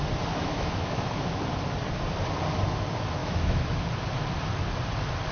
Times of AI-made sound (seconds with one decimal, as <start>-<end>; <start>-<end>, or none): 0.4-1.5; 3.2-3.8